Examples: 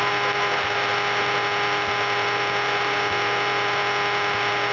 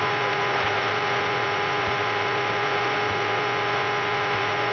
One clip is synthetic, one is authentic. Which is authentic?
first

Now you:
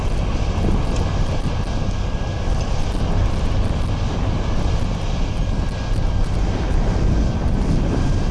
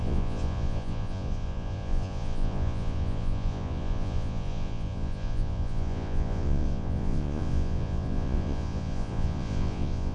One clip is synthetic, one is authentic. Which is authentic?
first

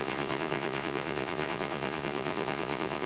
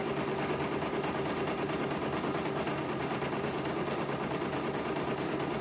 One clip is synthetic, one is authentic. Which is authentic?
second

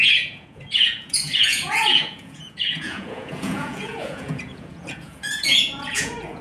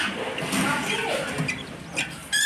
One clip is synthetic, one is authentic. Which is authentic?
second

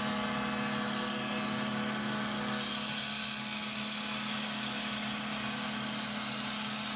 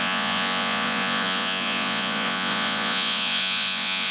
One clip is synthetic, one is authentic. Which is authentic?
first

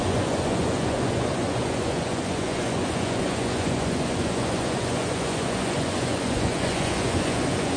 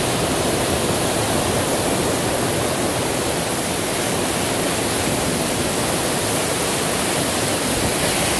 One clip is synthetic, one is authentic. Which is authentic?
second